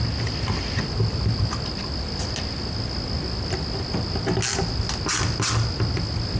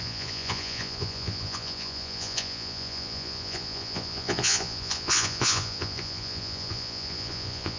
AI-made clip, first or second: second